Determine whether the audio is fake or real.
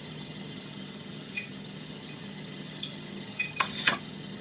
fake